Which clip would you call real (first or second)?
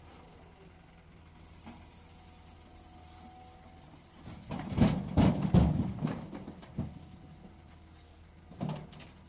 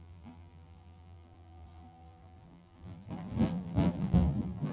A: first